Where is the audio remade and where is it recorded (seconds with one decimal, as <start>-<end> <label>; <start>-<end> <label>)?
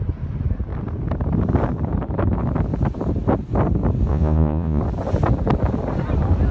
0.0-4.1 recorded; 4.1-4.8 remade; 4.8-6.5 recorded